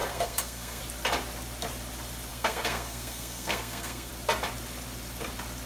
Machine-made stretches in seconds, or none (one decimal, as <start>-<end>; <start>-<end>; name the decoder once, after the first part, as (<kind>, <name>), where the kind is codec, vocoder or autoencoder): 0.0-0.8 (codec, SNAC); 2.3-4.1

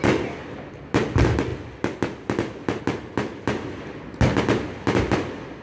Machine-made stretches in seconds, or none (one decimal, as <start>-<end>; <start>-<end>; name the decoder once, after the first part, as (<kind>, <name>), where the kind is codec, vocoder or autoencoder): none

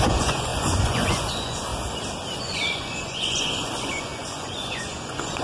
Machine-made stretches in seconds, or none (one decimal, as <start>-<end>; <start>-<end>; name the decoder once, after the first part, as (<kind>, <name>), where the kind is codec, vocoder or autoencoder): 0.0-1.7 (vocoder, Vocos); 2.4-5.4

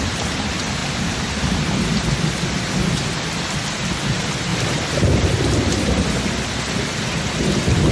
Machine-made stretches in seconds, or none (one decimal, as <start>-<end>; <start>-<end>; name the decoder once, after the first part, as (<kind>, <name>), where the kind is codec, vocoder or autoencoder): 0.8-1.4 (vocoder, BigVGAN v2)

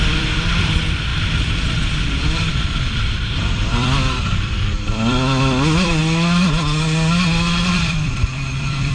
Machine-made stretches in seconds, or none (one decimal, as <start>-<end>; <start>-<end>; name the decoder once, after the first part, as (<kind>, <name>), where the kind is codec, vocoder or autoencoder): 0.0-6.0 (vocoder, BigVGAN v2); 7.7-8.9

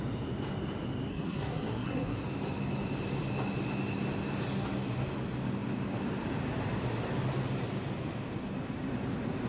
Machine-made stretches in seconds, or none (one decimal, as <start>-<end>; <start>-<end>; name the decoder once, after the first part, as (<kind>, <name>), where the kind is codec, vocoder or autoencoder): 1.1-2.2 (codec, SNAC)

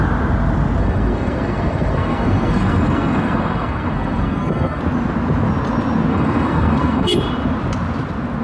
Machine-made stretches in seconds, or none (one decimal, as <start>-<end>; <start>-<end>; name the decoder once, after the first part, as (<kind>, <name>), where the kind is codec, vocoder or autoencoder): 0.8-4.8 (codec, SNAC); 6.1-7.1